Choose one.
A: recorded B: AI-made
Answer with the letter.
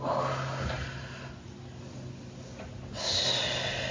A